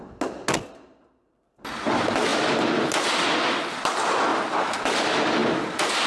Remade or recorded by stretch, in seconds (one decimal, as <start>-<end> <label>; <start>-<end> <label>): 0.0-6.1 recorded